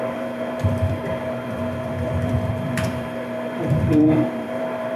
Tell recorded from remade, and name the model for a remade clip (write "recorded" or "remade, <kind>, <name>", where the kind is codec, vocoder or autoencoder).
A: remade, vocoder, BigVGAN v2